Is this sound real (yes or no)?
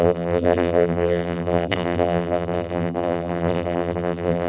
no